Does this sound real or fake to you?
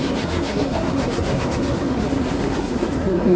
fake